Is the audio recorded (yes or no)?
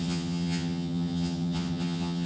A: no